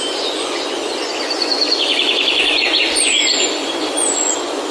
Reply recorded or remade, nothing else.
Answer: remade